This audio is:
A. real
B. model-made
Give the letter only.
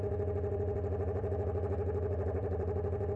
B